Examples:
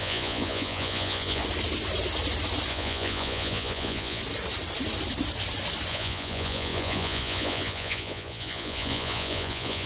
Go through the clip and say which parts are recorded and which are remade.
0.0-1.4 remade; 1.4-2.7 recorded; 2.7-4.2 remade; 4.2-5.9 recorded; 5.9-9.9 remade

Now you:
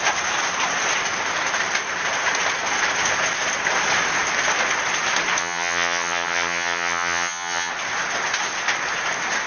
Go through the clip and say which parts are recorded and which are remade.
0.0-5.4 recorded; 5.4-7.7 remade; 7.7-9.5 recorded

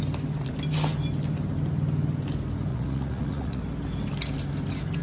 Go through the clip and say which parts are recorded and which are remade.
0.0-2.7 recorded; 2.7-3.6 remade; 3.6-5.0 recorded

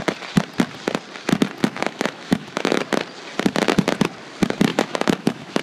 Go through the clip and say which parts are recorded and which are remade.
0.0-1.6 recorded; 1.6-2.8 remade; 2.8-4.7 recorded; 4.7-5.6 remade